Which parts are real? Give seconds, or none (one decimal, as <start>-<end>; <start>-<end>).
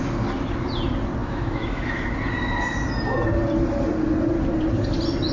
0.0-1.2; 2.1-5.3